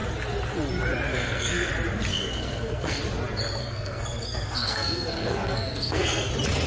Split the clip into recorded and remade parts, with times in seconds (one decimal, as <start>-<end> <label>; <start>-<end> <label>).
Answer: 0.0-1.1 recorded; 1.1-1.7 remade; 1.7-2.1 recorded; 2.1-3.0 remade; 3.0-3.6 recorded; 3.6-6.3 remade; 6.3-6.7 recorded